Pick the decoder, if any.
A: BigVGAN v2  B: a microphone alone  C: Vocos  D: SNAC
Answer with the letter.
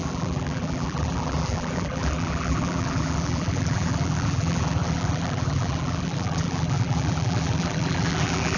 A